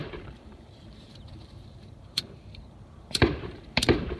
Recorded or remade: remade